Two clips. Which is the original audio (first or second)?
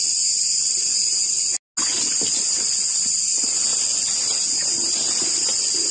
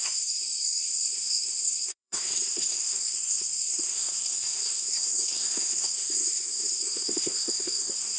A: first